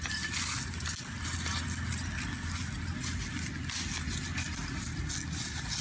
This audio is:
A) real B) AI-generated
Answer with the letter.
A